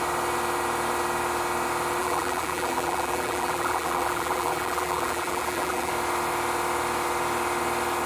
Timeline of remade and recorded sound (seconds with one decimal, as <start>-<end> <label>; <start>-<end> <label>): 0.0-2.0 recorded; 2.0-5.9 remade; 5.9-8.1 recorded